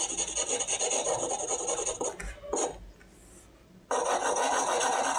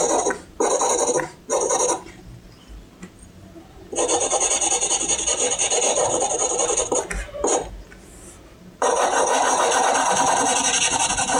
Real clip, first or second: first